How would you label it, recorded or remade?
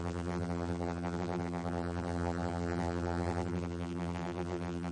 remade